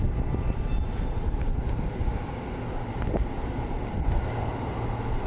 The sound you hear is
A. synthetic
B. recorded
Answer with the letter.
B